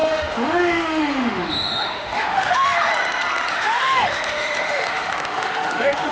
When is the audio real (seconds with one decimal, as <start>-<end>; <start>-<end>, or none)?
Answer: 2.9-3.5